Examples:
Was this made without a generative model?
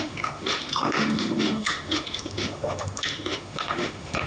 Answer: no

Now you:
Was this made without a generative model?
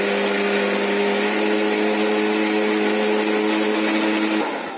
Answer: yes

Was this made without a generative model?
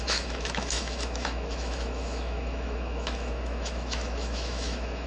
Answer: no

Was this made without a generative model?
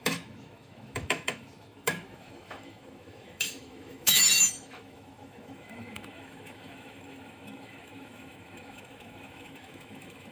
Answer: no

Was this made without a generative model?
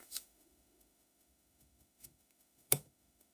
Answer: no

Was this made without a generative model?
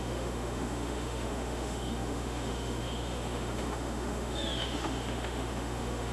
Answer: no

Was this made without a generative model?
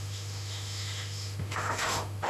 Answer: no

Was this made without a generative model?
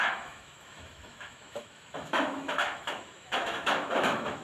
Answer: no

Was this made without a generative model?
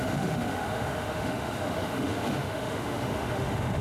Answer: no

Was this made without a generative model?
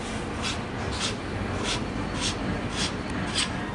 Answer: yes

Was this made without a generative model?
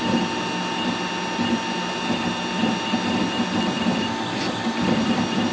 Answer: yes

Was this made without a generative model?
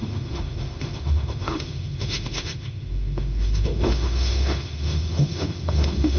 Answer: no